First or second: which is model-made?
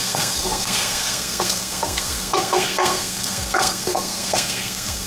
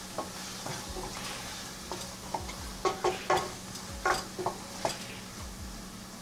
first